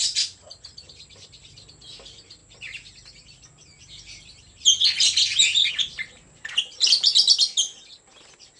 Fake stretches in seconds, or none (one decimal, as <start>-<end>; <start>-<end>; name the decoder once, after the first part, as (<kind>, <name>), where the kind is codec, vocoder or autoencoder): none